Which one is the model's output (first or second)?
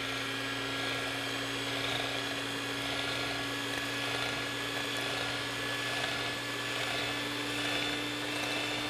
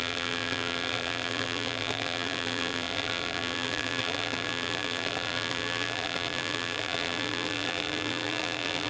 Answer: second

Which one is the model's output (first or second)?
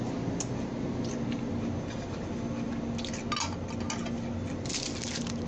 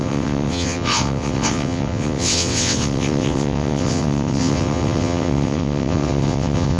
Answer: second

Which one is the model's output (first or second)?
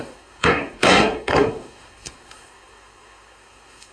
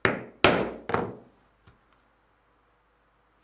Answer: first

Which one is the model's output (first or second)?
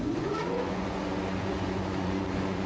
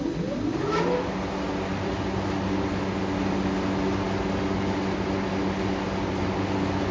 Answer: first